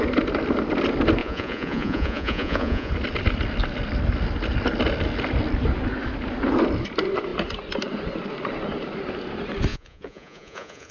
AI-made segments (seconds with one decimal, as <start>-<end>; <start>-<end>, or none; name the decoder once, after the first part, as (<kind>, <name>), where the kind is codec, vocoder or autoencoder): 1.2-2.9 (vocoder, Vocos); 9.7-10.9